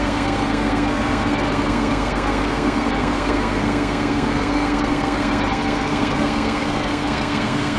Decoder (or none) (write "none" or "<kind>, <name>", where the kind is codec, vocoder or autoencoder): codec, SNAC